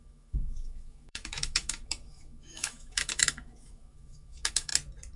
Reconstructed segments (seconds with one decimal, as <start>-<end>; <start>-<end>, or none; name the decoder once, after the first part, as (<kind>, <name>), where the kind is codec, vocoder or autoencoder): 0.0-4.7 (autoencoder, DAC-VAE)